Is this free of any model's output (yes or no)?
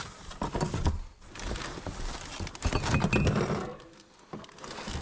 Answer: yes